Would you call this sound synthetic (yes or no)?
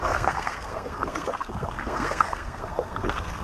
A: yes